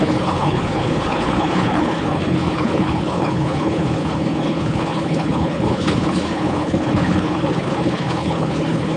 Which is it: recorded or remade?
remade